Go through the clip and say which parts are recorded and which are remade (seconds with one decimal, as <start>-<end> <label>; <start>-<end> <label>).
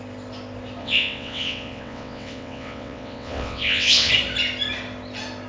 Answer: 0.0-0.8 recorded; 0.8-4.1 remade; 4.1-5.5 recorded